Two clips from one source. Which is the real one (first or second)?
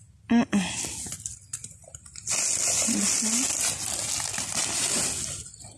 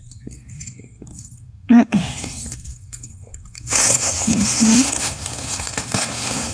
first